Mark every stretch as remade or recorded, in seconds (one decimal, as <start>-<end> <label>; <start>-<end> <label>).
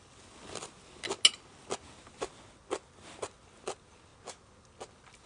0.0-5.3 recorded